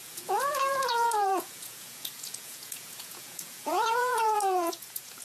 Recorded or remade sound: remade